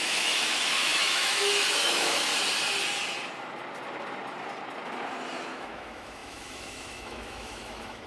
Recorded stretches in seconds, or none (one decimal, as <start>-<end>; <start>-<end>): 2.3-5.5